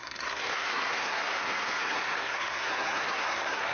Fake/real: fake